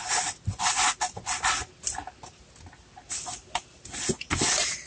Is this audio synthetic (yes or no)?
no